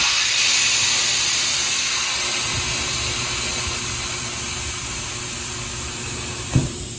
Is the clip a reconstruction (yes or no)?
no